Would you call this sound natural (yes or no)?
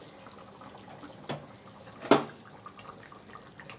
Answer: yes